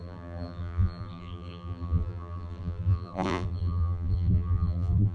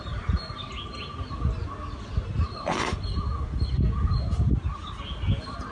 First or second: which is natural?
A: second